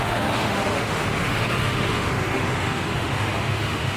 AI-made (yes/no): yes